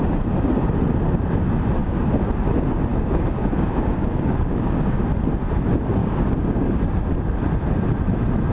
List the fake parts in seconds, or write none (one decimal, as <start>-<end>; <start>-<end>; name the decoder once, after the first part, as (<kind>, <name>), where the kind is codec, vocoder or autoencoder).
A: 1.8-2.3 (codec, DAC); 2.9-4.9; 6.0-6.8